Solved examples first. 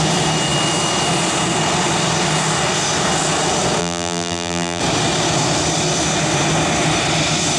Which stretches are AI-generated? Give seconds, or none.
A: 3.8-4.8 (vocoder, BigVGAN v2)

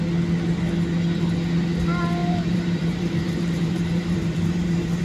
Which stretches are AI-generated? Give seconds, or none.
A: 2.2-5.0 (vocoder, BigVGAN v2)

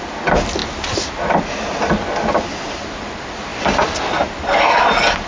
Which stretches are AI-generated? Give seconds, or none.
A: 3.5-4.4 (vocoder, BigVGAN v2)

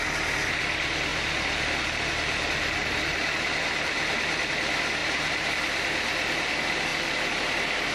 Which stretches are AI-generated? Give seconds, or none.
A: 1.1-4.5 (vocoder, BigVGAN v2)

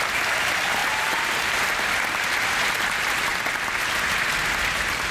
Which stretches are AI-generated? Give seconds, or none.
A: 0.8-1.5 (vocoder, BigVGAN v2)